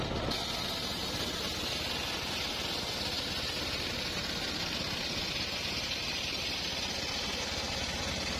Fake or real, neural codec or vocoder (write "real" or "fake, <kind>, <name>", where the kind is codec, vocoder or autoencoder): real